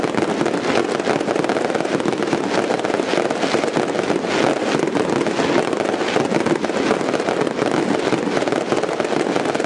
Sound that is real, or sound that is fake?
real